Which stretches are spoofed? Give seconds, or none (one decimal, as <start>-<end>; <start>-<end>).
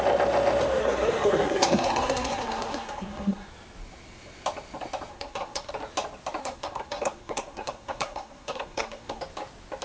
0.8-3.5; 5.1-5.7; 6.4-9.2